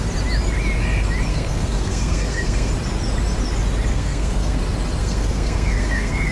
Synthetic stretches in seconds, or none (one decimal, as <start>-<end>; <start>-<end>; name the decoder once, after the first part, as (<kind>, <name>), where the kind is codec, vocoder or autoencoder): 1.3-2.7 (codec, SNAC); 3.9-4.6; 5.0-6.3

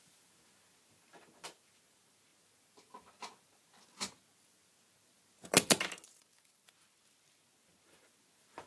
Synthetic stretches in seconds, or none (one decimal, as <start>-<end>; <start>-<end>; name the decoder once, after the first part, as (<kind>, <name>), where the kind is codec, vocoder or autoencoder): none

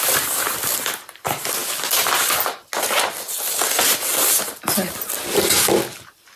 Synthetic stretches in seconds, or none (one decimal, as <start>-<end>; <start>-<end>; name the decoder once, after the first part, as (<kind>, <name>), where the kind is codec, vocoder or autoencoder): none

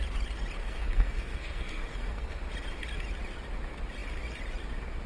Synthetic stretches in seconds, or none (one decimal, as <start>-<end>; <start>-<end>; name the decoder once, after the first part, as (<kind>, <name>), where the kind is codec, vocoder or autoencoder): 0.6-2.4 (codec, SNAC)